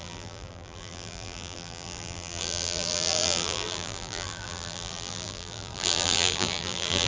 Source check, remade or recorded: remade